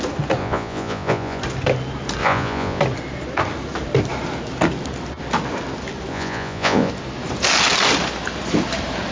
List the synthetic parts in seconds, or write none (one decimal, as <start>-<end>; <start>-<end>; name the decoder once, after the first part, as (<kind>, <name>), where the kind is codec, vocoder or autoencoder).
0.4-1.4 (vocoder, Vocos); 2.2-2.8; 6.1-6.9